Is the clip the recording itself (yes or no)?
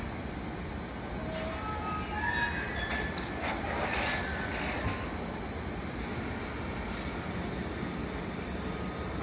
yes